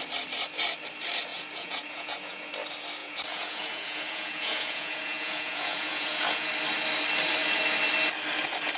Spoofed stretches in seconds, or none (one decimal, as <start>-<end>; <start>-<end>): 1.3-2.5; 3.0-6.5

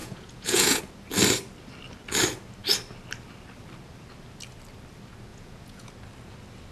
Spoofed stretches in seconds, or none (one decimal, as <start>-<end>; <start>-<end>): 0.0-0.8; 5.3-5.9

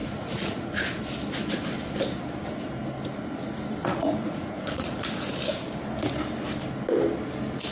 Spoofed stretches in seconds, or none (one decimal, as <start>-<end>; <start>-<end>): 0.0-1.0; 3.8-5.3